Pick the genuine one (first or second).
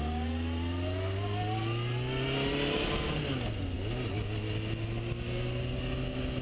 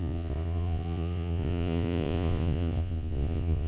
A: first